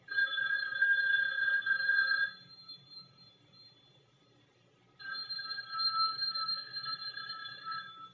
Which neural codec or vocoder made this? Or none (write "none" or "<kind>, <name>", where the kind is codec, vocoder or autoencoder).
none